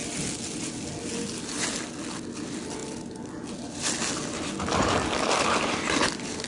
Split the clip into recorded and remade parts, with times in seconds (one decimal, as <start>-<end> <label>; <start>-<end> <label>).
0.0-6.5 recorded